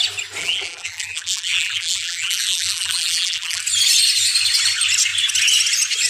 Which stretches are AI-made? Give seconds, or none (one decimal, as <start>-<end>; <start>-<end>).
0.4-3.6